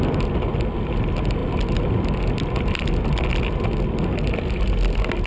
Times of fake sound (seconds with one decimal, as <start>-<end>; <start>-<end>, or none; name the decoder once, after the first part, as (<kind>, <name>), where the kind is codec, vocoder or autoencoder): none